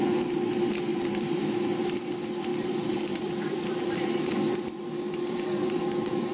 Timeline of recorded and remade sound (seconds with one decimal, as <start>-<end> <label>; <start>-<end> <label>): 0.0-0.9 recorded; 0.9-1.5 remade; 1.5-2.5 recorded; 2.5-5.8 remade; 5.8-6.3 recorded